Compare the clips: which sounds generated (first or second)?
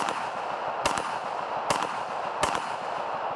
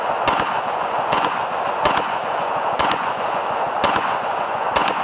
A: second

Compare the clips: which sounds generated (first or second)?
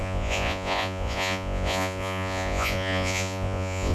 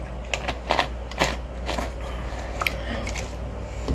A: first